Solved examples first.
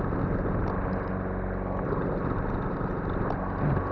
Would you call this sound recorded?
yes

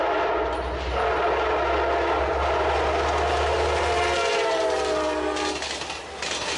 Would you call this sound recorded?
yes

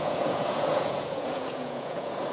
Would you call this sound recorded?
no